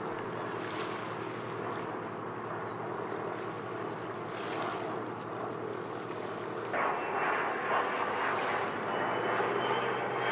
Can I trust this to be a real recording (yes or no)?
yes